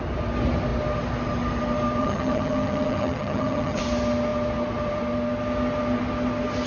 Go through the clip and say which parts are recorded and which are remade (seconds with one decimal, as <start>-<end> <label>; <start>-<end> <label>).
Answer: 0.0-2.0 recorded; 2.0-3.8 remade; 3.8-6.7 recorded